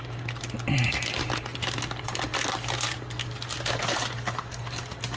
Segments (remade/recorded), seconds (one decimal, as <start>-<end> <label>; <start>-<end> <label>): 0.0-5.2 recorded